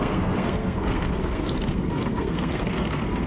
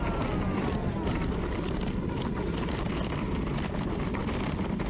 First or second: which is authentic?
second